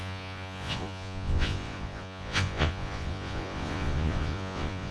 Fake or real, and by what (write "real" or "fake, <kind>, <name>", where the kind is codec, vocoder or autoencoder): fake, vocoder, Vocos